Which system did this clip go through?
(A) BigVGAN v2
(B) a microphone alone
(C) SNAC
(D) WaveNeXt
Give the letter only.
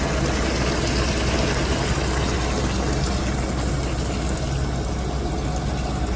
B